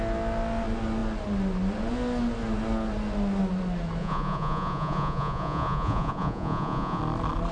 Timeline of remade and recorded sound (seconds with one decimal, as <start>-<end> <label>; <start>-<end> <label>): 0.0-4.0 recorded; 4.0-7.0 remade; 7.0-7.5 recorded